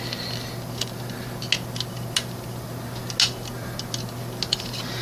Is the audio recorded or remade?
recorded